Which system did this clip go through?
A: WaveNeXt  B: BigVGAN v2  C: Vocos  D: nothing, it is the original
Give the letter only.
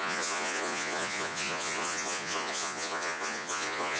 C